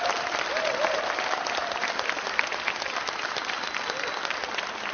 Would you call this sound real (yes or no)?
yes